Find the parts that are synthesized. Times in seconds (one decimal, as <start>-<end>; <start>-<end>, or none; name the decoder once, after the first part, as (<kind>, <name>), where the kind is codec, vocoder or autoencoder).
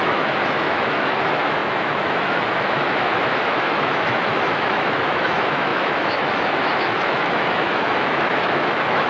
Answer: 0.0-9.1 (autoencoder, DAC-VAE)